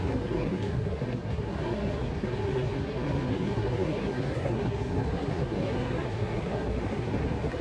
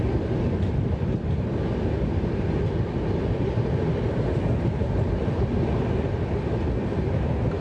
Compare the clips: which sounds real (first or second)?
second